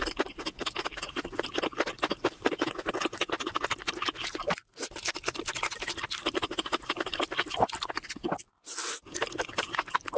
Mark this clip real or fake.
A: real